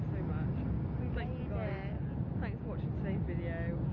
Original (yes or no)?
yes